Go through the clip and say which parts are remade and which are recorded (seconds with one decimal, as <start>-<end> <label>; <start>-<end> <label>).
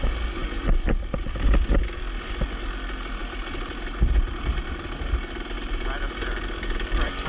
0.0-7.3 recorded